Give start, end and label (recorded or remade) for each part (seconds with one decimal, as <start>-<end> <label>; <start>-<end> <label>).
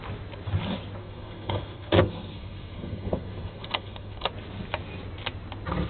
0.0-1.0 recorded; 1.0-4.3 remade; 4.3-5.9 recorded